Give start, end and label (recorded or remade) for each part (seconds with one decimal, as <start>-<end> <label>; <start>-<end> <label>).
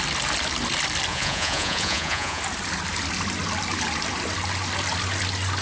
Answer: 0.0-1.1 recorded; 1.1-2.4 remade; 2.4-5.6 recorded